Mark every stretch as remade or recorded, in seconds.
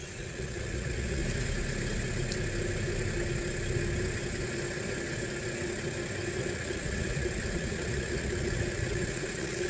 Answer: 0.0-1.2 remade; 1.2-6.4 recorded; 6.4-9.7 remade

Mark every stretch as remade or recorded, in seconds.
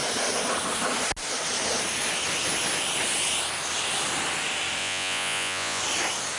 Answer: 0.0-4.8 recorded; 4.8-5.8 remade; 5.8-6.4 recorded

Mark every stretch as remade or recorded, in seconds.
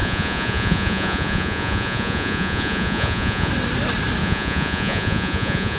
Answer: 0.0-3.5 remade; 3.5-4.2 recorded; 4.2-5.8 remade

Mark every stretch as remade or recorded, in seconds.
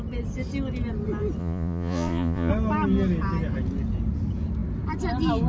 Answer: 0.0-1.4 recorded; 1.4-2.5 remade; 2.5-5.5 recorded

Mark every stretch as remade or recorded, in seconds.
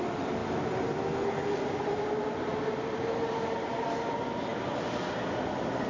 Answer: 0.0-5.9 recorded